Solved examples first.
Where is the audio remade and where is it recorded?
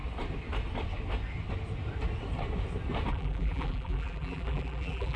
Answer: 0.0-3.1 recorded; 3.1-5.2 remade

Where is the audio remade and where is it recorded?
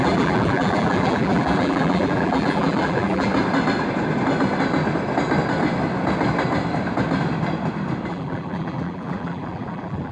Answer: 0.0-3.3 remade; 3.3-8.1 recorded; 8.1-10.1 remade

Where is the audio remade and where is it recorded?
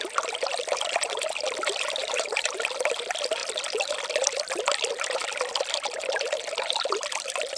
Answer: 0.0-2.0 recorded; 2.0-2.5 remade; 2.5-7.6 recorded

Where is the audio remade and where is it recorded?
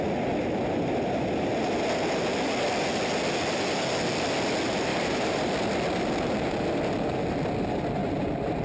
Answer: 0.0-4.9 recorded; 4.9-5.5 remade; 5.5-8.6 recorded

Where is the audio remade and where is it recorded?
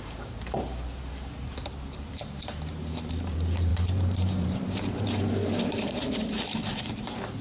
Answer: 0.0-7.4 remade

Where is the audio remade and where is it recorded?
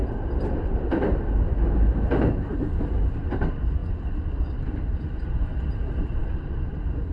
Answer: 0.0-3.8 remade; 3.8-4.6 recorded; 4.6-7.1 remade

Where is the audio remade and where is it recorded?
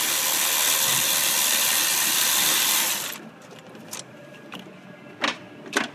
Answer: 0.0-0.9 recorded; 0.9-4.4 remade; 4.4-5.9 recorded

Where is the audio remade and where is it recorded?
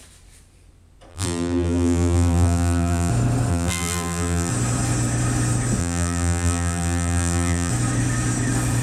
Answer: 0.0-1.1 recorded; 1.1-3.1 remade; 3.1-3.5 recorded; 3.5-4.5 remade; 4.5-5.8 recorded; 5.8-7.7 remade; 7.7-8.8 recorded